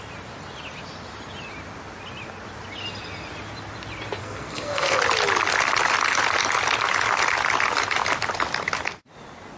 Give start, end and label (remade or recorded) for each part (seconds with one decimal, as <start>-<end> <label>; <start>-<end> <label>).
0.0-4.2 recorded; 4.2-5.0 remade; 5.0-9.6 recorded